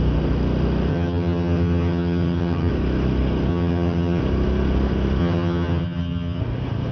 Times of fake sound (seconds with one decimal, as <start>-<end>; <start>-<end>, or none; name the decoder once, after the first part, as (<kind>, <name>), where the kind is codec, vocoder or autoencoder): 0.9-2.7 (vocoder, HiFi-GAN); 3.5-4.2; 5.2-6.4